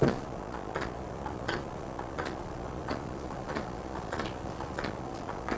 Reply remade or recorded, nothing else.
remade